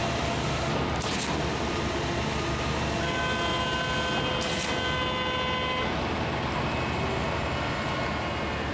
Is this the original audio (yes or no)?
yes